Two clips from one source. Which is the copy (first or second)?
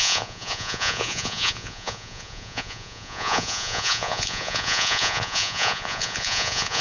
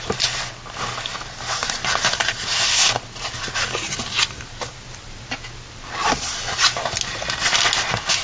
first